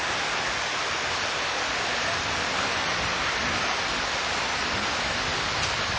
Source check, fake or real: real